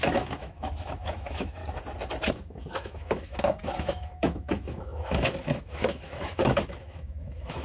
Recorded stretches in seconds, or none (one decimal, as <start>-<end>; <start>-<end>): 1.6-2.3